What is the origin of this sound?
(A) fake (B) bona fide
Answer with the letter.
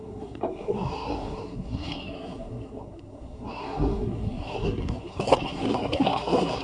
A